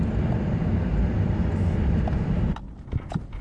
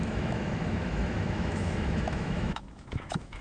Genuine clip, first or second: first